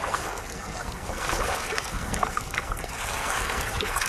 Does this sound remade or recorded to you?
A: remade